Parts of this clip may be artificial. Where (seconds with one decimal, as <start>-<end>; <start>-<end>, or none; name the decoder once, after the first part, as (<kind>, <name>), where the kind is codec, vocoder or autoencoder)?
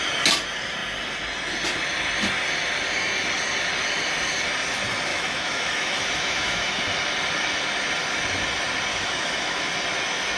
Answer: 5.1-6.8 (autoencoder, DAC-VAE); 8.9-9.7